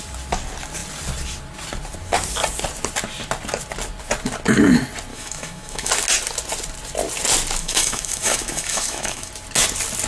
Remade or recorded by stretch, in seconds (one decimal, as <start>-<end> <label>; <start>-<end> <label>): 0.0-5.1 recorded; 5.1-5.9 remade; 5.9-7.6 recorded; 7.6-9.3 remade; 9.3-10.1 recorded